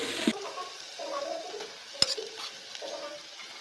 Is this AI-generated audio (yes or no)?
no